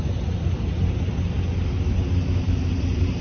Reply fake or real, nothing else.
real